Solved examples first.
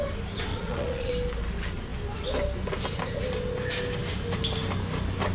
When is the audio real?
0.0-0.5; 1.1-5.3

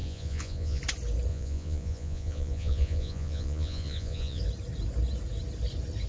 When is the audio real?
0.8-1.3; 4.4-6.1

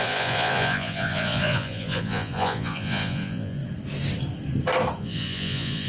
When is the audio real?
3.6-5.0